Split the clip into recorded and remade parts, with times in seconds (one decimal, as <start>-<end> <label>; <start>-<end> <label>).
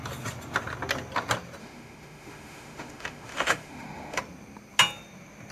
0.0-1.6 recorded; 1.6-4.2 remade; 4.2-5.5 recorded